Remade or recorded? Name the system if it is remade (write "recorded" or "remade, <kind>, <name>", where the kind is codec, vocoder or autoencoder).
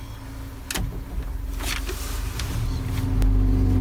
recorded